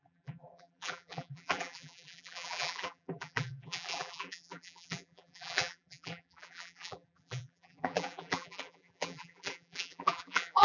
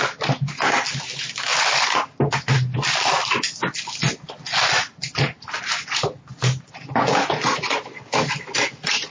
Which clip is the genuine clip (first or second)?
second